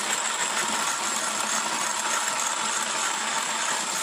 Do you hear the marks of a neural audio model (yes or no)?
no